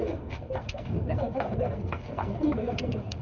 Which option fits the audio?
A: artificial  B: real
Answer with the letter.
A